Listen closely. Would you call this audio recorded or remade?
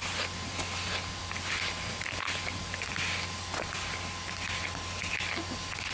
recorded